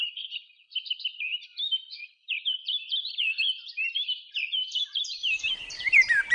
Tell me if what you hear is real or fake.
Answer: fake